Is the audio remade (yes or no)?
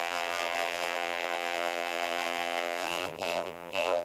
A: yes